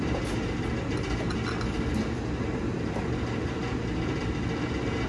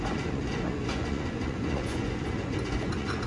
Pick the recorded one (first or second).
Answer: first